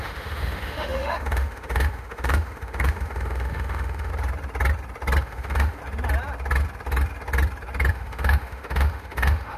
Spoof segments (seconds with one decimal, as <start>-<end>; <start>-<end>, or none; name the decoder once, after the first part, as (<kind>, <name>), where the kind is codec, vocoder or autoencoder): 0.0-4.1 (autoencoder, DAC-VAE); 5.2-5.8; 7.9-9.6